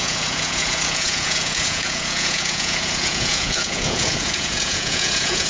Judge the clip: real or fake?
fake